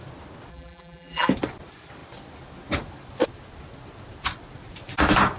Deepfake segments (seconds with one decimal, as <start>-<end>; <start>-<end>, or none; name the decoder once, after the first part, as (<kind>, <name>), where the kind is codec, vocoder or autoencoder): 0.5-1.3 (vocoder, BigVGAN v2)